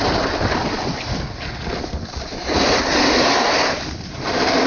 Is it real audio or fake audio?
real